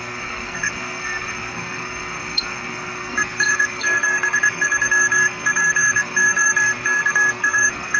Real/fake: fake